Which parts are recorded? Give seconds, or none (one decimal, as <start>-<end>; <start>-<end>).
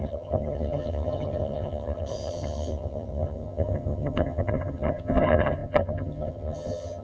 none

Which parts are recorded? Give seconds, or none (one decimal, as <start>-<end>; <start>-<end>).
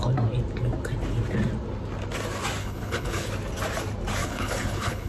0.0-2.6; 3.3-4.2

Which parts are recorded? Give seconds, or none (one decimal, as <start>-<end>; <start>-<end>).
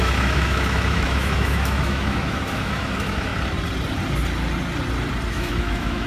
3.3-5.3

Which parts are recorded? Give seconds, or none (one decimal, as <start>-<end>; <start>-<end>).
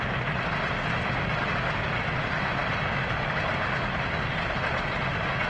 0.0-5.5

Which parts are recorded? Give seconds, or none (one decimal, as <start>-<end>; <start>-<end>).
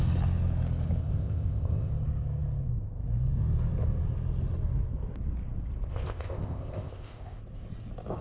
0.0-1.0; 1.9-5.9; 7.4-8.2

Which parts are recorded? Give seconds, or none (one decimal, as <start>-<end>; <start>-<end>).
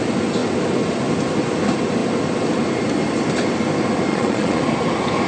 0.0-4.1; 4.6-5.3